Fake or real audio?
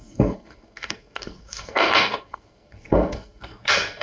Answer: fake